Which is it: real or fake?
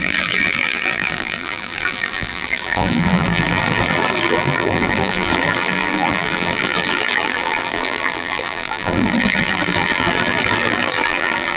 fake